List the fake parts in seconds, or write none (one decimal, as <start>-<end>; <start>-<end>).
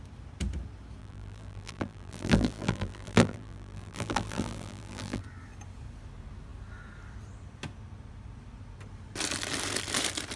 1.0-5.2